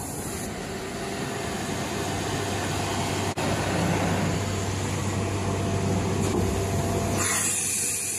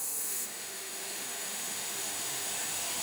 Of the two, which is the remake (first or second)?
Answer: second